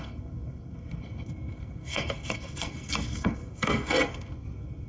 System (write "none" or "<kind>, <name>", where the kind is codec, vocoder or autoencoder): codec, SNAC